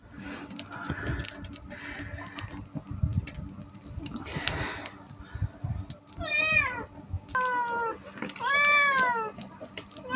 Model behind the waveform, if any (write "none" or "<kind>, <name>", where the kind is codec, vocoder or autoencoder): none